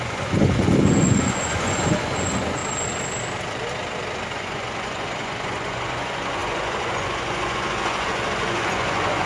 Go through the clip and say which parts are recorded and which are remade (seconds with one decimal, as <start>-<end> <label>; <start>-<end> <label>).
0.0-2.6 remade; 2.6-4.3 recorded; 4.3-9.3 remade